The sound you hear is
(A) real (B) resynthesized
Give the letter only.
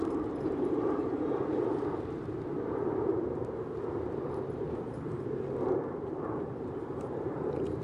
B